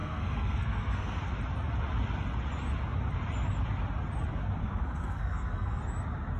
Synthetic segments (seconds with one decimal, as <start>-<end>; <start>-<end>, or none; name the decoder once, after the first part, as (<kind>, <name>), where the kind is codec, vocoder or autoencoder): 0.0-1.2 (codec, SNAC); 4.6-5.8